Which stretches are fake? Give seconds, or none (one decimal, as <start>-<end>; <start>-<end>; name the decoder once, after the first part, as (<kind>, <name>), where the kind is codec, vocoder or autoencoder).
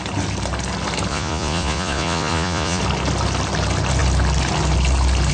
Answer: 1.1-2.8 (vocoder, Vocos)